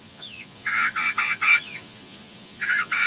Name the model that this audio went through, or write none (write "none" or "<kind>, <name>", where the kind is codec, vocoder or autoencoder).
vocoder, Vocos